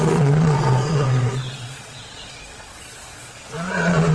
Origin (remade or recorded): remade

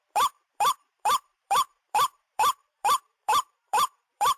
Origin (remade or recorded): remade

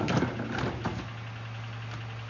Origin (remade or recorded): recorded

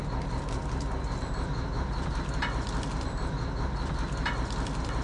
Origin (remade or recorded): recorded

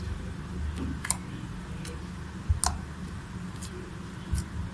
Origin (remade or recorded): recorded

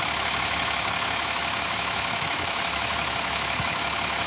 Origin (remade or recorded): remade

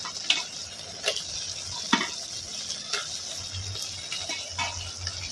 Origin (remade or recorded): recorded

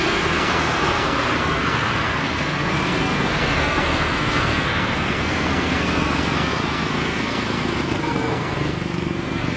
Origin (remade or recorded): remade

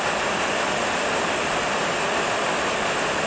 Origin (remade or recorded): recorded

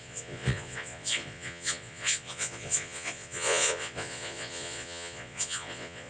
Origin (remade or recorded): remade